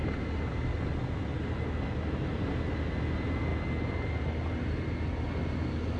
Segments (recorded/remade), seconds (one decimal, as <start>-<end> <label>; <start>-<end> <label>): 0.0-6.0 recorded